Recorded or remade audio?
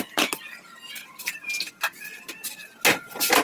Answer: recorded